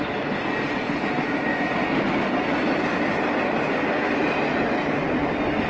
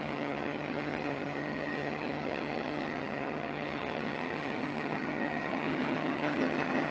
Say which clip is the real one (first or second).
first